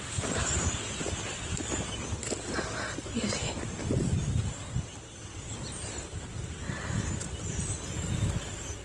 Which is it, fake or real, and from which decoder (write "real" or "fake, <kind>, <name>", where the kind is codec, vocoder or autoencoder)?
real